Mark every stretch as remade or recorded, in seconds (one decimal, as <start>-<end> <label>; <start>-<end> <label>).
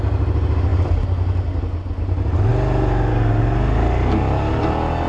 0.0-0.7 recorded; 0.7-1.6 remade; 1.6-2.5 recorded; 2.5-3.1 remade; 3.1-5.1 recorded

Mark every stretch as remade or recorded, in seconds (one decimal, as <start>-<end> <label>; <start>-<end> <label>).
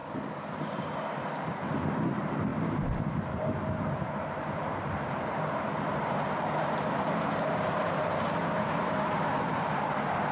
0.0-0.6 recorded; 0.6-10.3 remade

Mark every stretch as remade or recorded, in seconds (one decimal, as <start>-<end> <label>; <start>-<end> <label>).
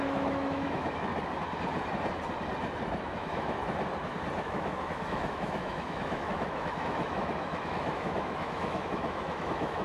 0.0-1.1 remade; 1.1-3.0 recorded; 3.0-3.6 remade; 3.6-4.4 recorded; 4.4-9.8 remade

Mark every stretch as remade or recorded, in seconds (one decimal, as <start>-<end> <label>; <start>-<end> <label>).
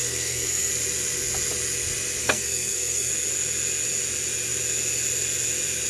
0.0-0.7 remade; 0.7-2.2 recorded; 2.2-3.1 remade; 3.1-5.9 recorded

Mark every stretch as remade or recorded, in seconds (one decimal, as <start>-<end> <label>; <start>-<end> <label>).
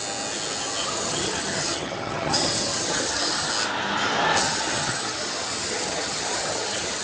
0.0-0.8 recorded; 0.8-3.5 remade; 3.5-4.4 recorded; 4.4-7.0 remade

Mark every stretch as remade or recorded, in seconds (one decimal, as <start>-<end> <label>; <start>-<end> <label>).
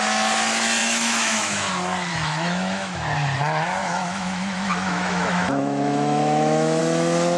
0.0-0.8 recorded; 0.8-1.7 remade; 1.7-2.1 recorded; 2.1-3.0 remade; 3.0-3.8 recorded; 3.8-6.8 remade; 6.8-7.4 recorded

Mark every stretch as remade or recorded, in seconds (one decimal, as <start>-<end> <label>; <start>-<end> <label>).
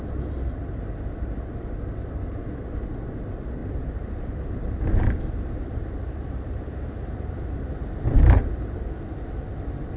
0.0-3.6 recorded; 3.6-8.8 remade; 8.8-10.0 recorded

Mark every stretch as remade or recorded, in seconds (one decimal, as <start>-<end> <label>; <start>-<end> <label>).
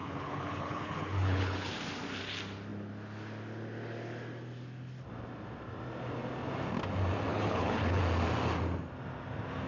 0.0-1.7 remade; 1.7-7.3 recorded; 7.3-8.0 remade; 8.0-9.7 recorded